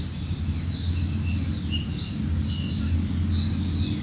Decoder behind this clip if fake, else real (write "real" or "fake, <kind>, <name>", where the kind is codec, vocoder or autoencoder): real